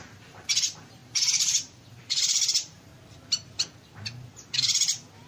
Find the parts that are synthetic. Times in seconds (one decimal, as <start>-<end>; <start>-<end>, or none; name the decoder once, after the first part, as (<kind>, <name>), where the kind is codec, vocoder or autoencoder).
0.0-2.9 (vocoder, BigVGAN v2)